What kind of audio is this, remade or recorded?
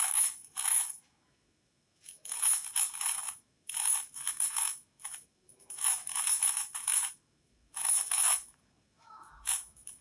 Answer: remade